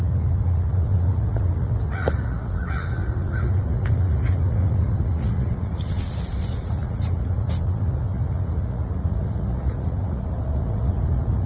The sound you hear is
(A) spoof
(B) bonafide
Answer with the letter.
A